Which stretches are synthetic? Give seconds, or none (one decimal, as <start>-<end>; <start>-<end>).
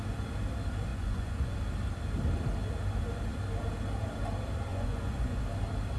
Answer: 0.9-1.5; 4.7-5.4